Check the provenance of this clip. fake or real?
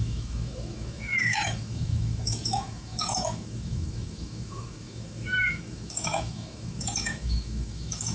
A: fake